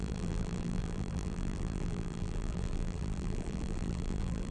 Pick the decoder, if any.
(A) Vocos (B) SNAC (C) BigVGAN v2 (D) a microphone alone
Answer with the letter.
C